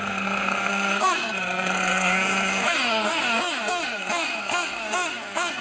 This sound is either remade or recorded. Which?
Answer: remade